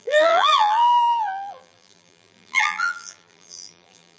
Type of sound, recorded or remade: remade